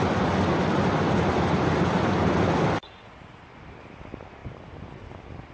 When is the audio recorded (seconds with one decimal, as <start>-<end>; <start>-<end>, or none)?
0.0-5.5